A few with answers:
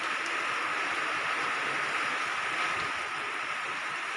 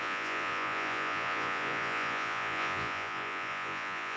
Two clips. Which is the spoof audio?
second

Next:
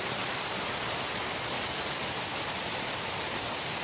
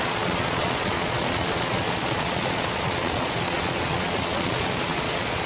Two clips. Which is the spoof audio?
second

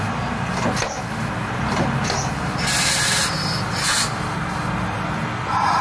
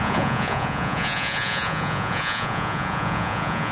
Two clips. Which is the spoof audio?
second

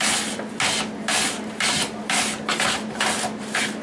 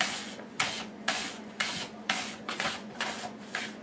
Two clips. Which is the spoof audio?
second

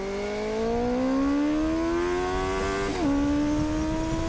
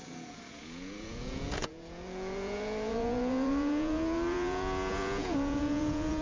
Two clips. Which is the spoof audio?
second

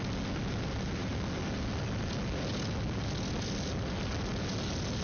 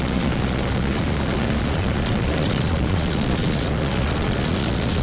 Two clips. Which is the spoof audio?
second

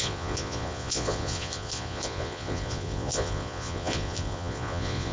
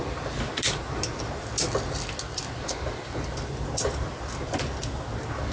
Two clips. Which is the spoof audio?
first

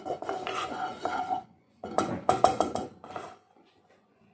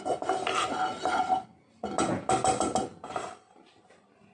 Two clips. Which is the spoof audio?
first